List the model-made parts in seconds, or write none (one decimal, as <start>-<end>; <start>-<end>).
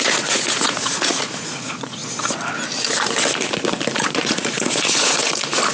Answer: 0.0-2.0; 3.9-5.7